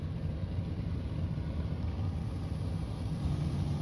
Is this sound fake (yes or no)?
no